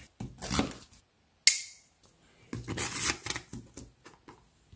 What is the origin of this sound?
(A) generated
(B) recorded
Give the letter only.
B